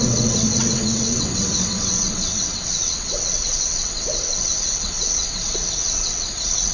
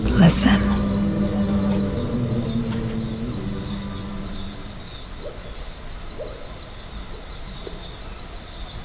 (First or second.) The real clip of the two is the second